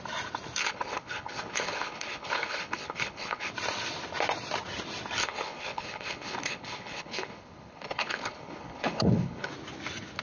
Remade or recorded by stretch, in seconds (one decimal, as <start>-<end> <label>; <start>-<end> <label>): 0.0-0.6 recorded; 0.6-3.5 remade; 3.5-5.2 recorded; 5.2-9.5 remade; 9.5-10.2 recorded